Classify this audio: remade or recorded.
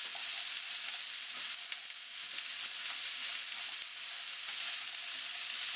recorded